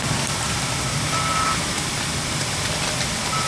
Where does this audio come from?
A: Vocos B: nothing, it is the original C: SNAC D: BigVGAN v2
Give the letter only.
D